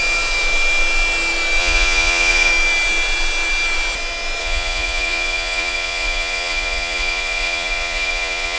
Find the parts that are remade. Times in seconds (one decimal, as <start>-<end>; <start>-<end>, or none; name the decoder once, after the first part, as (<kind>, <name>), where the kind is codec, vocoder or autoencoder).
1.6-2.5 (vocoder, Vocos); 4.4-8.6